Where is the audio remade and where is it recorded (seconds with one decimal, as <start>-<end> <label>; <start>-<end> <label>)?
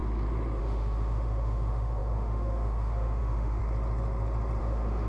0.0-0.6 recorded; 0.6-3.6 remade; 3.6-4.6 recorded; 4.6-5.1 remade